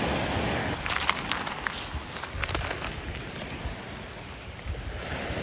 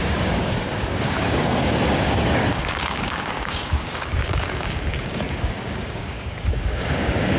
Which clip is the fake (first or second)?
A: second